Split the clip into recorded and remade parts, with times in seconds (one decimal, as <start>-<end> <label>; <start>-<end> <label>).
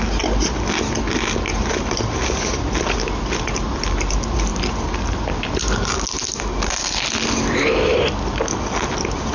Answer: 0.0-9.3 recorded